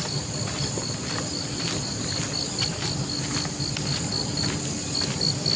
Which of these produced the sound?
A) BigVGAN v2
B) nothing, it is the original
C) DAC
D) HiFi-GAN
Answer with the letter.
B